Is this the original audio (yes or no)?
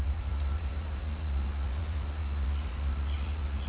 no